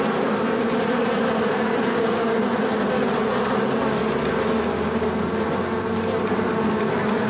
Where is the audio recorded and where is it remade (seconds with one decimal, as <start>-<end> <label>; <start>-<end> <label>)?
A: 0.0-7.3 recorded